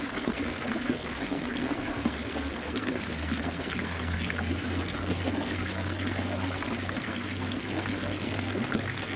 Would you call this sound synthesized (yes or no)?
yes